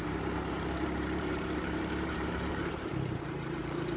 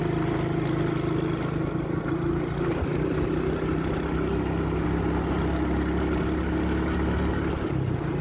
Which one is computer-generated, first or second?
first